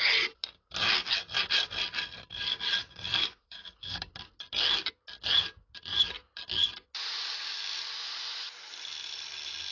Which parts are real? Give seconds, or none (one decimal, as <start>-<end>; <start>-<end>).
0.0-2.8; 4.1-9.7